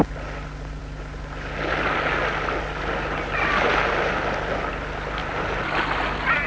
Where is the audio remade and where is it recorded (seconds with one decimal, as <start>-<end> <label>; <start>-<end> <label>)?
0.0-6.5 recorded